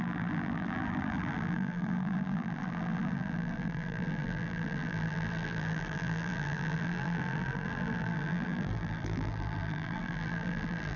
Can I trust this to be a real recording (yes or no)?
no